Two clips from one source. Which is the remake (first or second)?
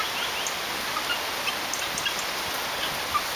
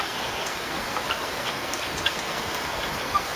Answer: second